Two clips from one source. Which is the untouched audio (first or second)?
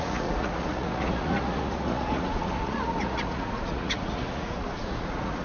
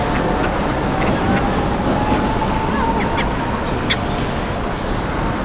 second